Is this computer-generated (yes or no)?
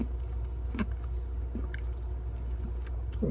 no